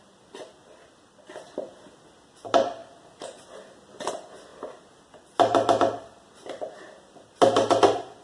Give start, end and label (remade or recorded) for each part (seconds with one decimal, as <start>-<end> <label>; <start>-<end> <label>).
0.0-8.2 recorded